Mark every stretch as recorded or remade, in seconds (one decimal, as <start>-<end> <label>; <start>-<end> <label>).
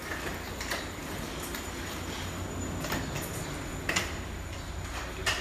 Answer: 0.0-5.4 recorded